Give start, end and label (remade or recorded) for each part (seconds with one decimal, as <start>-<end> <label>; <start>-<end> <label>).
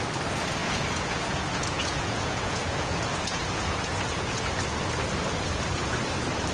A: 0.0-0.6 recorded; 0.6-4.5 remade; 4.5-6.5 recorded